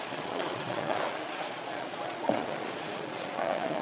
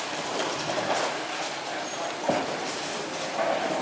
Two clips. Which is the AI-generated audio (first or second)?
first